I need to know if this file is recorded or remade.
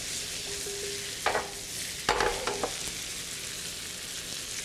recorded